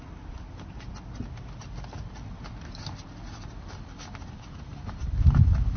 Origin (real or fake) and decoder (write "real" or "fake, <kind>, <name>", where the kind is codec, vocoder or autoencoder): real